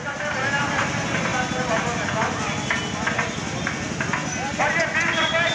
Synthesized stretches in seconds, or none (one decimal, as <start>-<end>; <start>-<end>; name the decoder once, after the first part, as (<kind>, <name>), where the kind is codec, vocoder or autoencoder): none